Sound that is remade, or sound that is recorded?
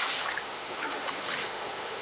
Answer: remade